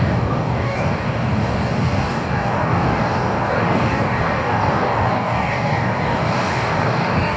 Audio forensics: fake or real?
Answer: fake